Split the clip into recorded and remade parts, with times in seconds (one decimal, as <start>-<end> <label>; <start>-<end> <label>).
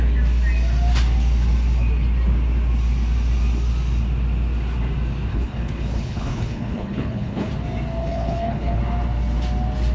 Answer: 0.0-5.3 recorded; 5.3-7.5 remade; 7.5-8.0 recorded; 8.0-8.8 remade; 8.8-9.9 recorded